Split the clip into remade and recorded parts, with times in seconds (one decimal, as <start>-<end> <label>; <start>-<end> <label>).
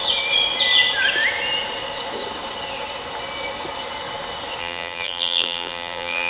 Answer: 0.0-4.6 recorded; 4.6-6.3 remade